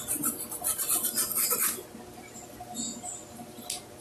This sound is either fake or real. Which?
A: real